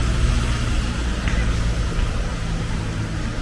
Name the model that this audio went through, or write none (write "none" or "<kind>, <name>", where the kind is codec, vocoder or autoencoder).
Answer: none